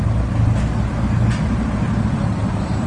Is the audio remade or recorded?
recorded